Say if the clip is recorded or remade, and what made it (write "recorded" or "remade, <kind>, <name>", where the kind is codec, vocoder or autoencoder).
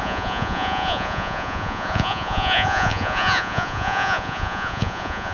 remade, vocoder, Vocos